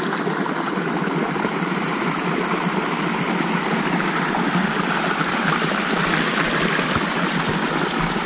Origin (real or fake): real